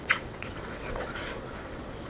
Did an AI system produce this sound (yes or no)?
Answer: yes